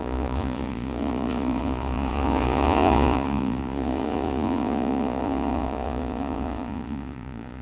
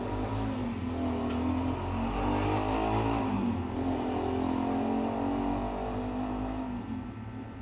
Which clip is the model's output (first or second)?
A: first